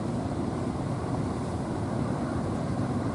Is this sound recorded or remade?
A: remade